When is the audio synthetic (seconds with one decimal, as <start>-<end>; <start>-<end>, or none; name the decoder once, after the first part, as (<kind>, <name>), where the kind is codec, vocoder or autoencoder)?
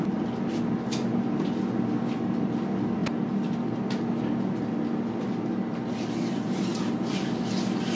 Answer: none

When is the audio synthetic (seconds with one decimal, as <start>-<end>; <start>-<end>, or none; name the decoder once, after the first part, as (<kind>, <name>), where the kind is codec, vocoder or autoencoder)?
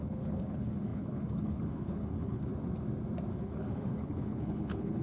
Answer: 0.0-2.5 (codec, HILCodec); 3.3-5.0